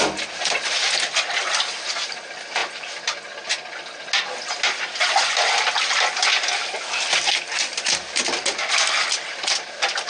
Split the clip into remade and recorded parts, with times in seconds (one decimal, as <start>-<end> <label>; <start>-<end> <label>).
0.0-10.1 recorded